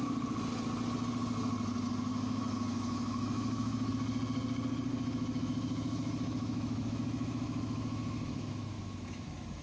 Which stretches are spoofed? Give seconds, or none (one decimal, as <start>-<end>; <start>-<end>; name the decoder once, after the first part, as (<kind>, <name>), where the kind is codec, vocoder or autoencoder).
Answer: 2.1-3.9 (autoencoder, DAC-VAE); 4.9-9.6